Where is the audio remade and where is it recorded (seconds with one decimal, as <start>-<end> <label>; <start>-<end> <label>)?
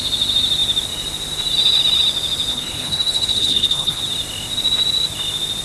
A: 0.0-2.5 recorded; 2.5-4.0 remade; 4.0-5.6 recorded